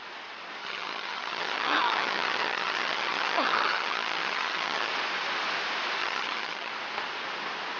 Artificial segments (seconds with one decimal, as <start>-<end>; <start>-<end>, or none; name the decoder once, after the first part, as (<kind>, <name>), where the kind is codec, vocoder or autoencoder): 0.6-4.9 (vocoder, HiFi-GAN); 6.0-6.7